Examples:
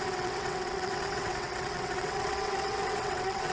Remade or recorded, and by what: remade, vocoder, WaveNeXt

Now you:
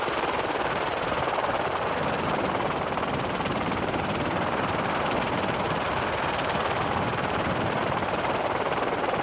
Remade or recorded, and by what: remade, vocoder, BigVGAN v2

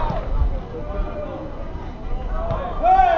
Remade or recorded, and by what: recorded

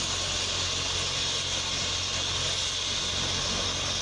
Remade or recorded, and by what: recorded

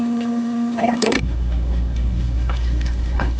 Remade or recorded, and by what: remade, codec, SNAC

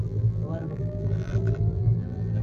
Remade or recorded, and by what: remade, vocoder, BigVGAN v2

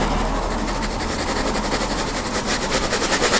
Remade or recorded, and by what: recorded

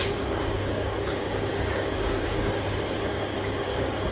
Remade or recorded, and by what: remade, codec, DAC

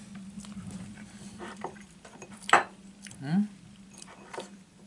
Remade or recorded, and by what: remade, vocoder, BigVGAN v2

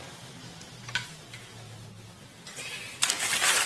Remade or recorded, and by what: recorded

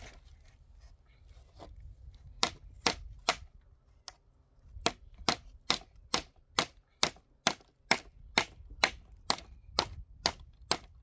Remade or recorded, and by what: recorded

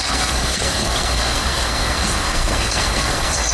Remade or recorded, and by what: remade, codec, SNAC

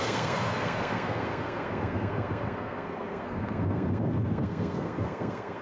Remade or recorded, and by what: remade, codec, SNAC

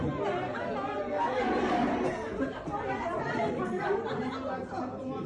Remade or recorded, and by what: recorded